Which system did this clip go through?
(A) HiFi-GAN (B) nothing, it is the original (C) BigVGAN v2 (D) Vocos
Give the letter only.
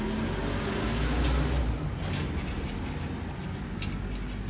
B